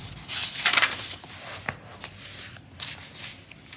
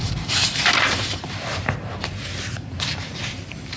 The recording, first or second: first